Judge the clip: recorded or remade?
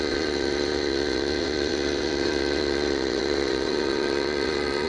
remade